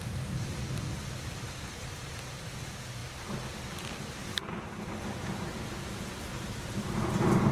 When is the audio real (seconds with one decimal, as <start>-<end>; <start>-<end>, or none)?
0.0-6.3; 7.0-7.5